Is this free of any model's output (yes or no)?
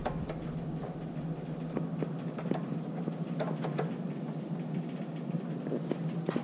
yes